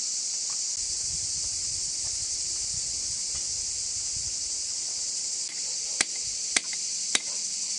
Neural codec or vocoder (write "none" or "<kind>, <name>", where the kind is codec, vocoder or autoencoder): none